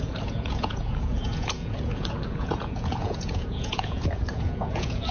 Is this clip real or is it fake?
fake